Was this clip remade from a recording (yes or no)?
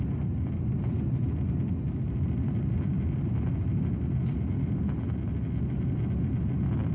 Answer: no